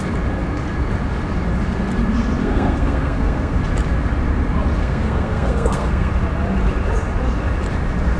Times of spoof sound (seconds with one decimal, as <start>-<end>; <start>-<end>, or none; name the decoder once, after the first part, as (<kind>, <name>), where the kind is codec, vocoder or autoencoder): 2.4-3.6 (codec, SNAC); 4.8-6.1